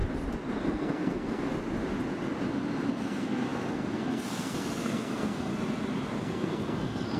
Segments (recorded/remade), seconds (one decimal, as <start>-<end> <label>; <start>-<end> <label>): 0.0-0.6 recorded; 0.6-1.5 remade; 1.5-2.9 recorded; 2.9-5.5 remade; 5.5-6.2 recorded; 6.2-7.2 remade